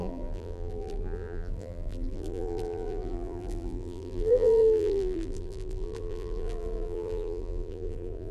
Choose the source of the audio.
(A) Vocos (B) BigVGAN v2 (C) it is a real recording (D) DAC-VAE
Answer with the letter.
B